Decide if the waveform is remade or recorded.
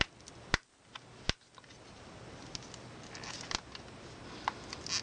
recorded